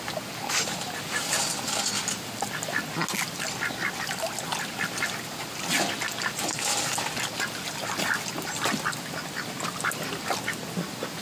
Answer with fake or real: real